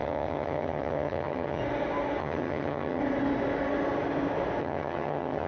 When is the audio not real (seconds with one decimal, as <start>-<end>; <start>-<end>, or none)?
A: 0.0-1.6; 2.2-3.0; 4.6-5.5